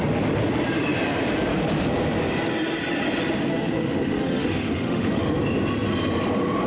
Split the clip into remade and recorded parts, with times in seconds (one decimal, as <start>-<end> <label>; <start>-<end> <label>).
0.0-3.5 recorded; 3.5-5.2 remade; 5.2-6.7 recorded